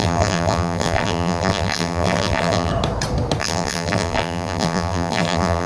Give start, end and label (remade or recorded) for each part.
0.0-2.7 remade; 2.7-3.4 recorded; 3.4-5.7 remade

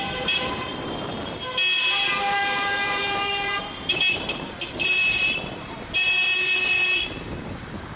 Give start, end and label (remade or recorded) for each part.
0.0-0.7 remade; 0.7-1.8 recorded; 1.8-8.0 remade

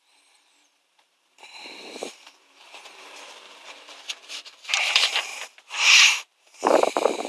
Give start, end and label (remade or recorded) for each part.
0.0-5.3 remade; 5.3-6.0 recorded; 6.0-7.3 remade

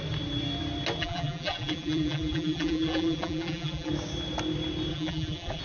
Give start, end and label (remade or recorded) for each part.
0.0-1.0 recorded; 1.0-3.9 remade; 3.9-4.9 recorded; 4.9-5.6 remade

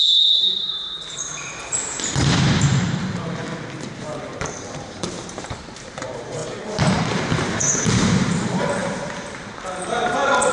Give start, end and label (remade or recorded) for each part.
0.0-3.4 remade; 3.4-4.0 recorded; 4.0-6.4 remade; 6.4-6.9 recorded; 6.9-10.5 remade

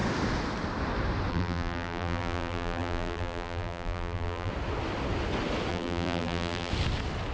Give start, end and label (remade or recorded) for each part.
0.0-1.3 recorded; 1.3-4.5 remade; 4.5-5.7 recorded; 5.7-6.7 remade; 6.7-7.3 recorded

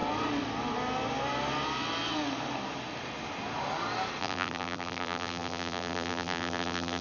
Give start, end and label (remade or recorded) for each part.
0.0-4.2 recorded; 4.2-7.0 remade